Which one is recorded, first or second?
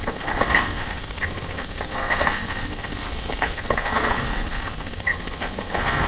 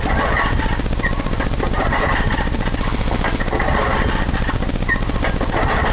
second